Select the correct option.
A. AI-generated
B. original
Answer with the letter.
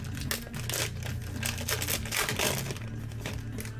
B